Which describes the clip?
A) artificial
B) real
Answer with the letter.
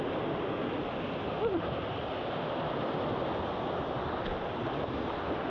B